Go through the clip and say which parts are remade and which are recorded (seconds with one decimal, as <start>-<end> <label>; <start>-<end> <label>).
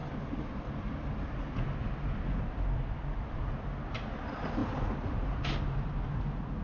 0.0-6.6 recorded